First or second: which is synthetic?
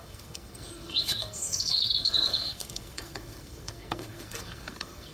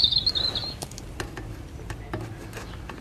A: first